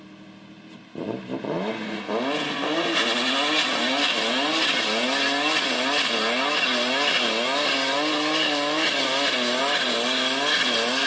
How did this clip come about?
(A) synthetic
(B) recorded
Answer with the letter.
B